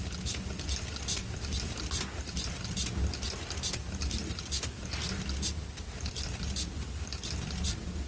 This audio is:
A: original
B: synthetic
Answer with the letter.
A